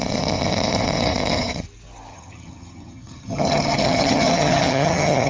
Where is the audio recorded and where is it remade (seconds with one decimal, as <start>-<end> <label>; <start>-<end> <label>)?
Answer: 0.0-2.1 recorded; 2.1-5.3 remade